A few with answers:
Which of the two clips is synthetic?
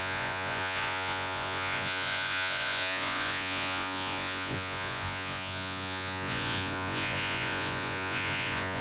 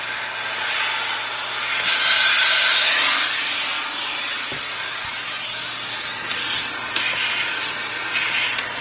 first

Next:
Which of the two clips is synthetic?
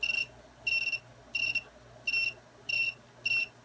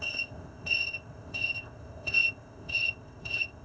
second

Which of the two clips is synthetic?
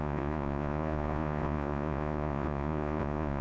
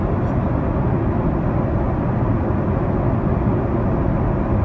first